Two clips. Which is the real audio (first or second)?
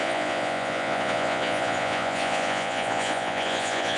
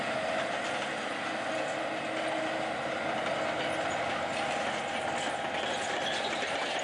second